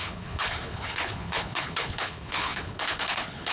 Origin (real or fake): fake